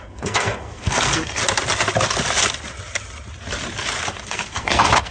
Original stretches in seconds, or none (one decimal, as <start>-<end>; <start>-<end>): 1.4-4.2